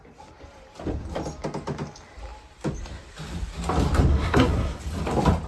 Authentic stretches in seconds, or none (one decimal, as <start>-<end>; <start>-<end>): 0.0-4.1; 4.8-5.5